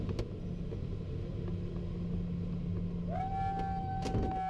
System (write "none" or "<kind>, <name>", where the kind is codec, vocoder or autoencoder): none